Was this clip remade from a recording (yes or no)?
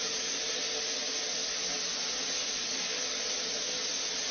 no